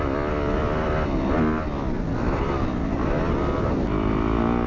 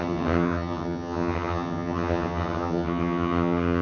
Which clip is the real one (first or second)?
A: first